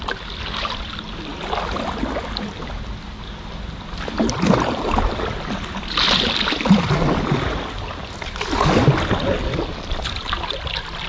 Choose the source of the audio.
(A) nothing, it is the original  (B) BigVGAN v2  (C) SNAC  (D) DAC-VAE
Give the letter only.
A